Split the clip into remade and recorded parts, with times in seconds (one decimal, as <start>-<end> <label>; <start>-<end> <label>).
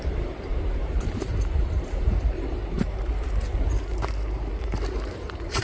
0.0-5.6 remade